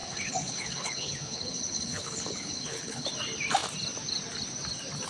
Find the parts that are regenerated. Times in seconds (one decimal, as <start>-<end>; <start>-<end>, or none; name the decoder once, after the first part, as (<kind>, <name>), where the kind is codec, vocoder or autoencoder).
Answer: 0.0-3.1 (codec, HILCodec)